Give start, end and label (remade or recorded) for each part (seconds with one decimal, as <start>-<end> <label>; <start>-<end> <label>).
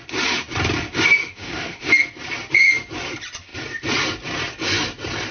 0.0-1.2 recorded; 1.2-1.9 remade; 1.9-5.3 recorded